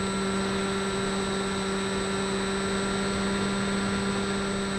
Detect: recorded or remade recorded